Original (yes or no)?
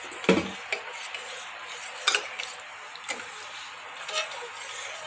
yes